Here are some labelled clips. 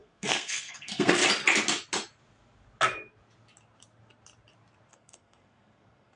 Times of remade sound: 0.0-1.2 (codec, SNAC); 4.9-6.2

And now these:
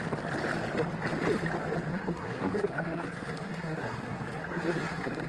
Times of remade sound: 1.9-5.3 (codec, SNAC)

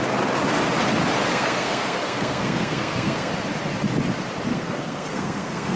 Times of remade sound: 1.3-3.3 (codec, SNAC); 4.5-5.8

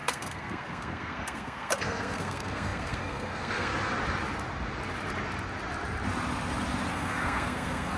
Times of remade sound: 0.0-3.7 (codec, SNAC); 6.9-8.0